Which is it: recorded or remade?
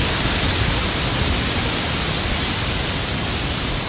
recorded